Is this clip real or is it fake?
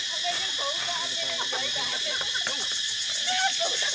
real